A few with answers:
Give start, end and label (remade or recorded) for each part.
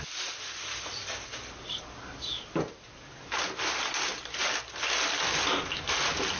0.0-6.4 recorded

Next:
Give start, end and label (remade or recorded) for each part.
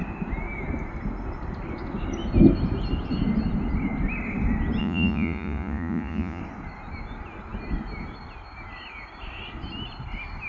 0.0-4.8 recorded; 4.8-6.4 remade; 6.4-10.5 recorded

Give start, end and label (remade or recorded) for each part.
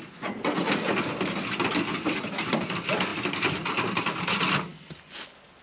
0.0-5.6 recorded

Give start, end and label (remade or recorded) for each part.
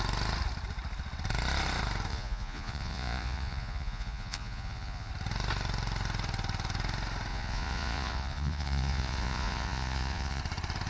0.0-2.1 recorded; 2.1-5.1 remade; 5.1-7.3 recorded; 7.3-10.4 remade; 10.4-10.9 recorded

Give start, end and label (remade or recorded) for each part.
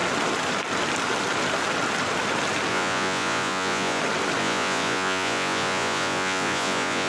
0.0-2.7 recorded; 2.7-4.0 remade; 4.0-4.4 recorded; 4.4-7.1 remade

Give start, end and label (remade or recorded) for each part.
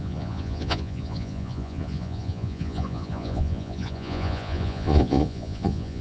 0.0-6.0 remade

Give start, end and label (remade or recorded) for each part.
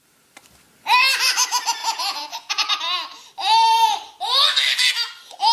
0.0-1.8 recorded; 1.8-2.7 remade; 2.7-5.5 recorded